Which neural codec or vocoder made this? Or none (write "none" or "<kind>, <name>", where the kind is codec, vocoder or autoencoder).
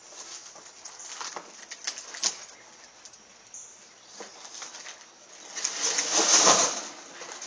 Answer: none